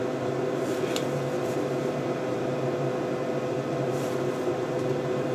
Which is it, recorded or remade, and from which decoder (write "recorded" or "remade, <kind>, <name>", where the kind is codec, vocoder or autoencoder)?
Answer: recorded